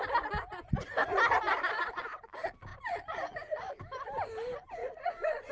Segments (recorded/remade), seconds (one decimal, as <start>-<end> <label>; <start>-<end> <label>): 0.0-4.8 recorded; 4.8-5.5 remade